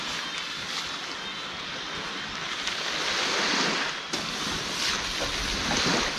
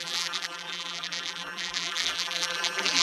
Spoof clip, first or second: second